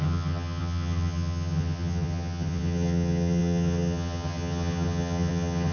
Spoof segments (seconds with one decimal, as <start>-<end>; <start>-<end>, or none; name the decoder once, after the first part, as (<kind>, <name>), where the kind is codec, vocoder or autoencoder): 0.0-5.7 (vocoder, HiFi-GAN)